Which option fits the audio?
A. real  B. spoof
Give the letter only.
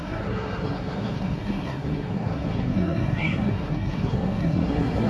B